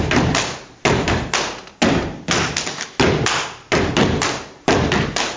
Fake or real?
real